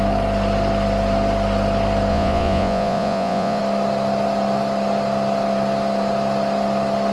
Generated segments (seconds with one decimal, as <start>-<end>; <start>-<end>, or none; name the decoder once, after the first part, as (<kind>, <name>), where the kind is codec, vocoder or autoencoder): 2.1-3.6 (vocoder, Vocos)